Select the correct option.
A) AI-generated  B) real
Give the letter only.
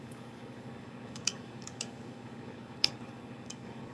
A